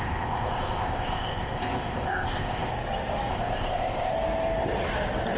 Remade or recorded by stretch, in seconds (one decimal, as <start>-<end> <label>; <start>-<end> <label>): 0.0-2.7 remade; 2.7-3.3 recorded; 3.3-4.1 remade; 4.1-5.4 recorded